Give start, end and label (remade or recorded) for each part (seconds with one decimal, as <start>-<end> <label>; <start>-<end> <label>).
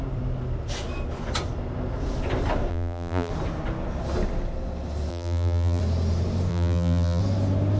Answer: 0.0-2.7 recorded; 2.7-3.3 remade; 3.3-5.1 recorded; 5.1-5.8 remade; 5.8-6.5 recorded; 6.5-7.2 remade; 7.2-7.8 recorded